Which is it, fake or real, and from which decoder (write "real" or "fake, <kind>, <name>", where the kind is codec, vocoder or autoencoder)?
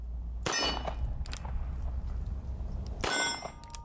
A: real